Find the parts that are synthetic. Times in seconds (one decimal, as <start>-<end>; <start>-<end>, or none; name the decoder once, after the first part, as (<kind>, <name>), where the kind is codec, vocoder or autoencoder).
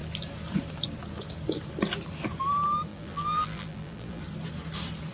2.9-4.2 (vocoder, BigVGAN v2)